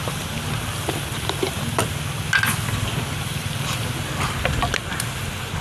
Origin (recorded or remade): recorded